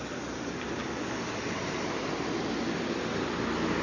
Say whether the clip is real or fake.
real